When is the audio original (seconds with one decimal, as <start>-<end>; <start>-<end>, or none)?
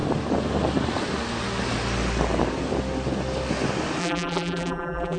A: 0.0-4.0